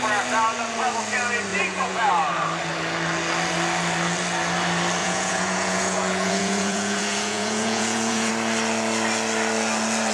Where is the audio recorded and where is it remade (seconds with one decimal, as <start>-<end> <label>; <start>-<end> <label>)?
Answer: 0.0-1.5 recorded; 1.5-2.1 remade; 2.1-5.0 recorded; 5.0-8.3 remade; 8.3-10.1 recorded